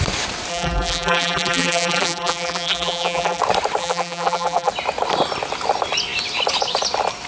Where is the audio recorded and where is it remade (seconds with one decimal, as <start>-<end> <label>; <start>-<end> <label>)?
0.0-0.5 recorded; 0.5-3.4 remade; 3.4-3.8 recorded; 3.8-4.7 remade; 4.7-7.3 recorded